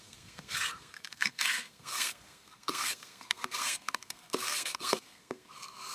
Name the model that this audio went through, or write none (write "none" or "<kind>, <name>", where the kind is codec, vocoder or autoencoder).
codec, SNAC